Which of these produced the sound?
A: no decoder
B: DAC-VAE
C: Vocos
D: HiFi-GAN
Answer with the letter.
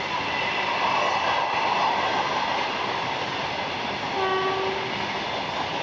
A